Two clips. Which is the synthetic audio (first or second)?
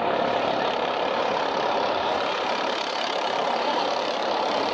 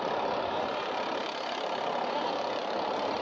first